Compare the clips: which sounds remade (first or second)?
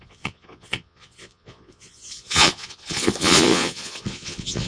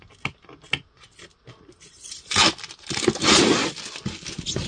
first